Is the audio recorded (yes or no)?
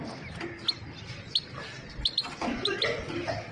yes